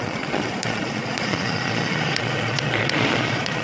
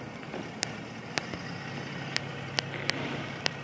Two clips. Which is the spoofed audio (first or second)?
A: first